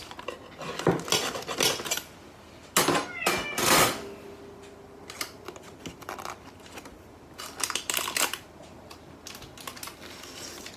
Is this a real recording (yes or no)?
yes